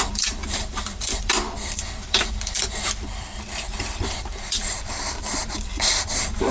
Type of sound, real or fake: fake